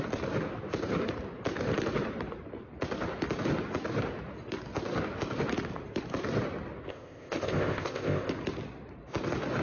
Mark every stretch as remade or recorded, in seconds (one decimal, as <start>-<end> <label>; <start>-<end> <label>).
0.0-6.9 recorded; 6.9-8.3 remade; 8.3-9.6 recorded